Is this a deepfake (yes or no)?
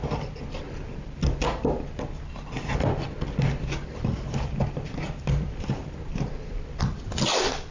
no